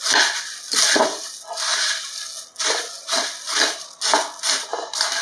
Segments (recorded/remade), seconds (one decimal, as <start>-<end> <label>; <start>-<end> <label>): 0.0-5.2 recorded